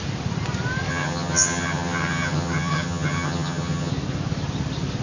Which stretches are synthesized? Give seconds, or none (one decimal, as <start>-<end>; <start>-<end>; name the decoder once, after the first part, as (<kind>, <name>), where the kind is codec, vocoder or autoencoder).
0.9-3.9 (vocoder, HiFi-GAN)